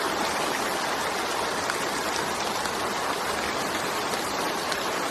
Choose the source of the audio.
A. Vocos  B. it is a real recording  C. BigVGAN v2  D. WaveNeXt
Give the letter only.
B